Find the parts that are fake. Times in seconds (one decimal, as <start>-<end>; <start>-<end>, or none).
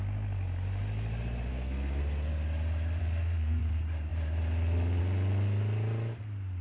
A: 1.5-2.0; 3.0-3.6